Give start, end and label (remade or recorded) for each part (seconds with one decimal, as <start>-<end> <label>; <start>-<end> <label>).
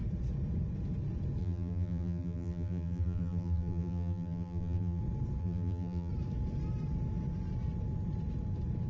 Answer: 0.0-1.4 recorded; 1.4-5.0 remade; 5.0-5.4 recorded; 5.4-6.1 remade; 6.1-8.9 recorded